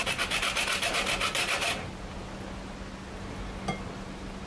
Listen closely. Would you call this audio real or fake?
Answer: real